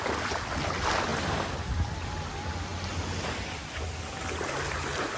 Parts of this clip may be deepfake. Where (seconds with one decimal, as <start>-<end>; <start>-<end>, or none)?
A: 1.1-1.7